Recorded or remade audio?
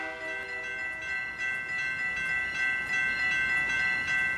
recorded